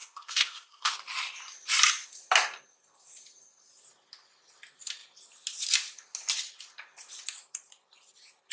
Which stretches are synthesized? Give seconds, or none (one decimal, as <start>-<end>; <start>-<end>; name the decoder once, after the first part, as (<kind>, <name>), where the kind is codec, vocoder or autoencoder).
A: 0.0-0.9 (codec, ZipCodec)